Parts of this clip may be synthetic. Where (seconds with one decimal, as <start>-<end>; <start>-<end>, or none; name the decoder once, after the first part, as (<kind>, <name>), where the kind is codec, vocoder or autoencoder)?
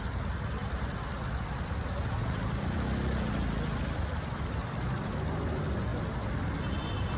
none